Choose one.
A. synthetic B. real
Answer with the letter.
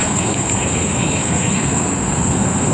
A